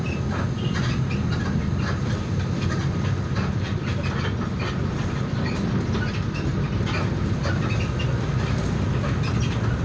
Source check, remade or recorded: recorded